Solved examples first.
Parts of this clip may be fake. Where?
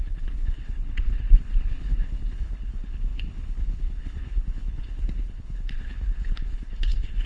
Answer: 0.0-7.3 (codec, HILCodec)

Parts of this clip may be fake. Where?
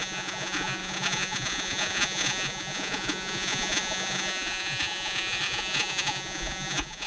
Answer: 0.0-7.1 (vocoder, Vocos)